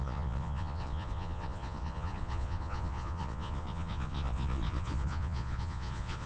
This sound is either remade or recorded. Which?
remade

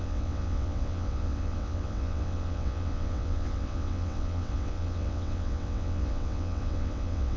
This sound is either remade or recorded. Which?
remade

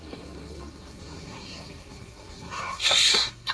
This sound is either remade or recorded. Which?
remade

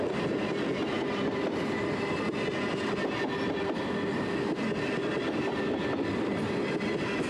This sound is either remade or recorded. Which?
recorded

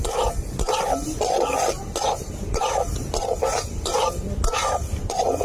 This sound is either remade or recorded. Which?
recorded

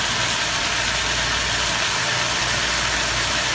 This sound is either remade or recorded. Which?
recorded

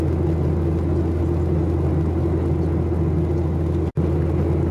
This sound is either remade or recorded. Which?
recorded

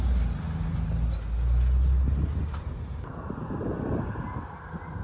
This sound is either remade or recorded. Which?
recorded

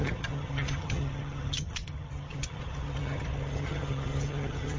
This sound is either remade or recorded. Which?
remade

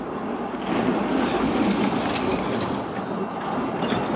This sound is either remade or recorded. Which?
recorded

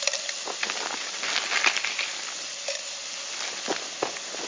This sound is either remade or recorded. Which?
recorded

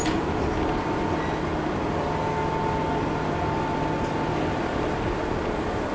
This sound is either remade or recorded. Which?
recorded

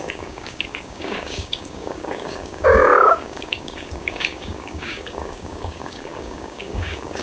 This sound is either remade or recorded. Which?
remade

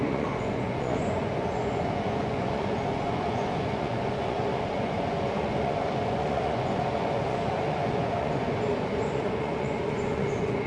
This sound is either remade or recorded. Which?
remade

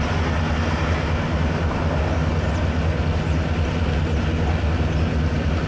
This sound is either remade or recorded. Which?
recorded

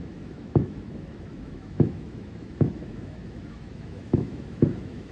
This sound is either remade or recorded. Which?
remade